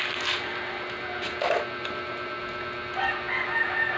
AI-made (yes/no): no